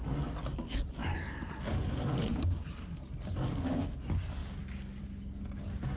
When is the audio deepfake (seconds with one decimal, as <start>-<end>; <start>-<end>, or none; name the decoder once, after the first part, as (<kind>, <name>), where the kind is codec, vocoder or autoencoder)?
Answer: none